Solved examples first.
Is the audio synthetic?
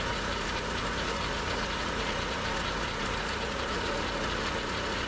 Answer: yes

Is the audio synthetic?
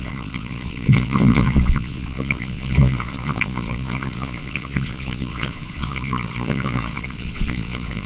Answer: yes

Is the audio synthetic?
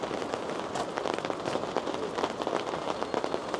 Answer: no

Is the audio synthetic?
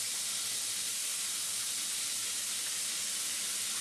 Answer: no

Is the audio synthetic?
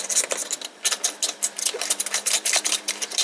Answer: no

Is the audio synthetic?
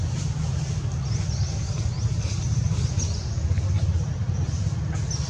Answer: no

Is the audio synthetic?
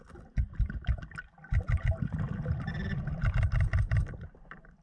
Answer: no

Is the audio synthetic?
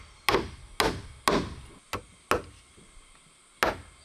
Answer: no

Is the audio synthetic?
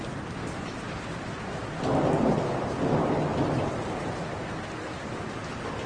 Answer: no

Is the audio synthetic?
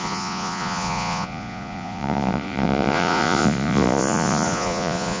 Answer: yes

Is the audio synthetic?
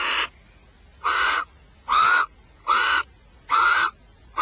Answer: yes